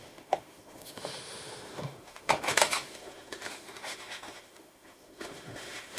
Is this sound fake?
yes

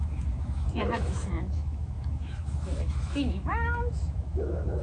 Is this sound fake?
yes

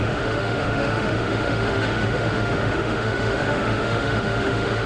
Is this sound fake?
yes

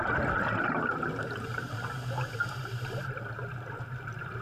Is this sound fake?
no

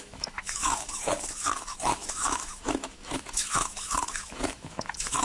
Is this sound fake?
yes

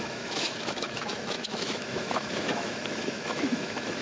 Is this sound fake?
yes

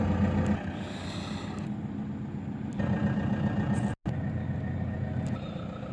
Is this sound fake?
no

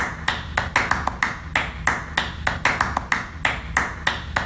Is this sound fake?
no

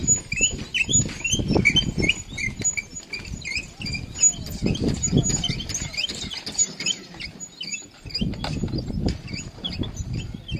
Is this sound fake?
no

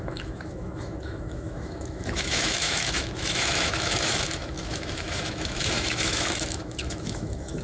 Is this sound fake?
yes